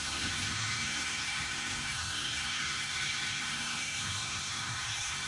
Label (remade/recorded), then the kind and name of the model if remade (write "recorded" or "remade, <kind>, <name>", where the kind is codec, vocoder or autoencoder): remade, codec, SNAC